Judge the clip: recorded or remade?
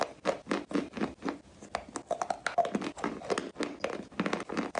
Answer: recorded